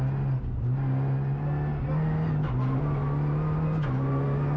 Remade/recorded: recorded